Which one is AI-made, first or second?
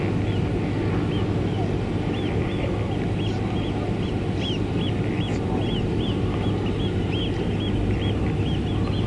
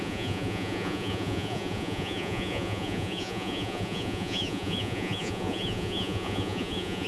second